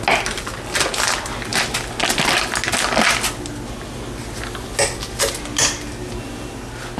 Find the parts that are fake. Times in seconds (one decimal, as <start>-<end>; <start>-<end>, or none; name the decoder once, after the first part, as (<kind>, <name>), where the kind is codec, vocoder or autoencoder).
none